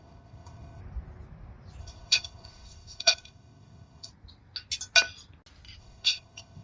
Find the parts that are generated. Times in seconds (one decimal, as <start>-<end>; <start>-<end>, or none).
0.0-0.8; 1.8-4.1; 5.8-6.6